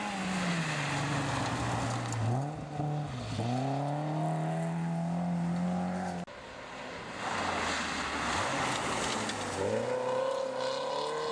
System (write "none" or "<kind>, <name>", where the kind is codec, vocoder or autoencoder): none